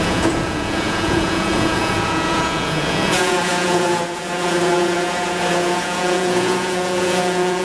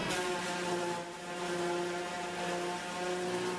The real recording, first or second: second